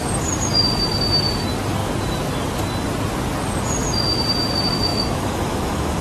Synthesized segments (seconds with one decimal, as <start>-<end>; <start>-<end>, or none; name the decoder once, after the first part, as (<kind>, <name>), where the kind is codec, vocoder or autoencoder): 4.9-6.0 (autoencoder, DAC-VAE)